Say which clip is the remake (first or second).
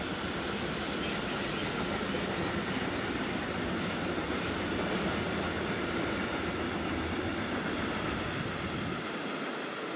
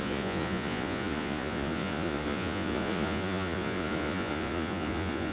second